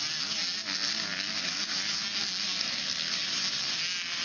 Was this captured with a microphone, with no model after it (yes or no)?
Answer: yes